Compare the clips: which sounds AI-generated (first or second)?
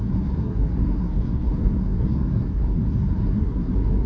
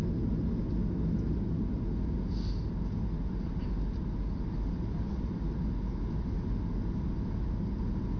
first